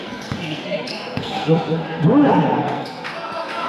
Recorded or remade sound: remade